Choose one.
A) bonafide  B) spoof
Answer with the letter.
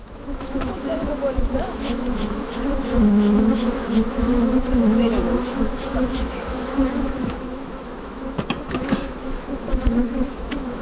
B